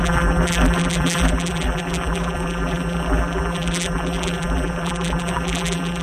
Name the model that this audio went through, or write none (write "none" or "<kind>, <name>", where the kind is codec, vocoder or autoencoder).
vocoder, BigVGAN v2